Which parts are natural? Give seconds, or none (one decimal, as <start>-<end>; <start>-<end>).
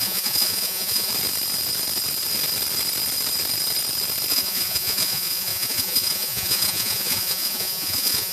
1.1-4.3